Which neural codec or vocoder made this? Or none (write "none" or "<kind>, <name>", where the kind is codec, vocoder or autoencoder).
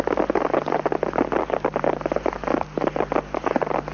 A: none